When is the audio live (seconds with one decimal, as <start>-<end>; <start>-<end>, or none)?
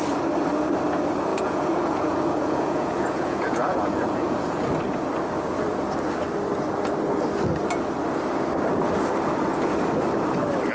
0.0-1.3; 4.7-10.7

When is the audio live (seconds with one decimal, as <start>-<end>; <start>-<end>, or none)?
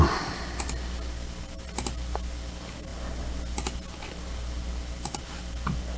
0.0-6.0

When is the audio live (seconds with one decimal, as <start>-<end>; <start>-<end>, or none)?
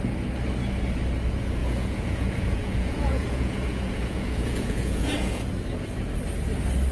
0.0-1.6; 5.5-6.9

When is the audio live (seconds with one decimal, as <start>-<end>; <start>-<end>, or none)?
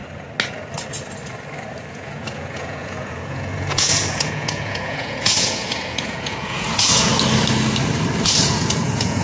0.0-1.9; 7.1-8.4